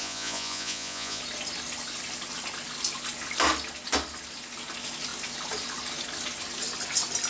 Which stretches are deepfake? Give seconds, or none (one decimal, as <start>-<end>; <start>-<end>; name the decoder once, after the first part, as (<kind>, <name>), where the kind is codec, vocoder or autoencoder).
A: 0.0-1.2 (vocoder, Vocos)